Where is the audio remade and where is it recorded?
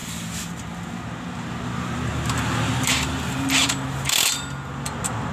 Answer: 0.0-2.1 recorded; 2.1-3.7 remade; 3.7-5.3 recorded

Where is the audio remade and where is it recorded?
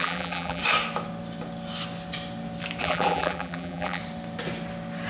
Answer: 0.0-0.6 remade; 0.6-2.8 recorded; 2.8-4.0 remade; 4.0-5.1 recorded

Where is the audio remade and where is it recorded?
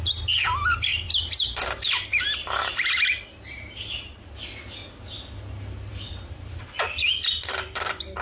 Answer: 0.0-0.9 recorded; 0.9-2.2 remade; 2.2-5.9 recorded; 5.9-8.2 remade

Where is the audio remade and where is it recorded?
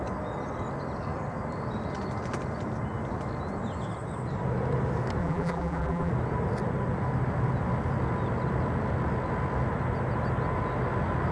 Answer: 0.0-5.2 recorded; 5.2-6.1 remade; 6.1-11.3 recorded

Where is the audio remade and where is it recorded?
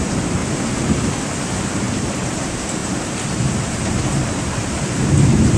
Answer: 0.0-0.4 remade; 0.4-1.8 recorded; 1.8-5.6 remade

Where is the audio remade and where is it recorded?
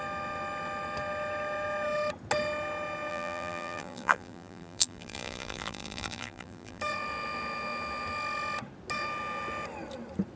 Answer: 0.0-3.1 recorded; 3.1-6.8 remade; 6.8-10.4 recorded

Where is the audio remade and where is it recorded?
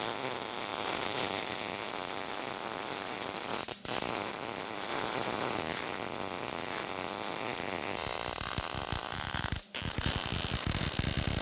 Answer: 0.0-0.7 recorded; 0.7-1.4 remade; 1.4-3.5 recorded; 3.5-4.3 remade; 4.3-4.9 recorded; 4.9-5.8 remade; 5.8-9.0 recorded; 9.0-10.1 remade; 10.1-11.4 recorded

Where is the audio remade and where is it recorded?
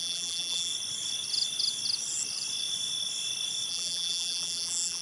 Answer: 0.0-0.7 remade; 0.7-3.7 recorded; 3.7-5.0 remade